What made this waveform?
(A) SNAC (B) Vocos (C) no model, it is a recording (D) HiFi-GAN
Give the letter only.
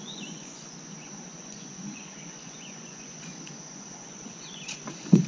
B